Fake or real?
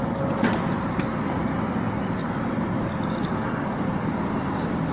real